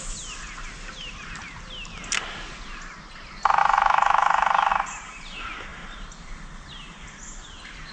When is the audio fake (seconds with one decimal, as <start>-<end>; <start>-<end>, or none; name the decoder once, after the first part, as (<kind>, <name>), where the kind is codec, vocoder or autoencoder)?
3.6-4.7 (autoencoder, DAC-VAE)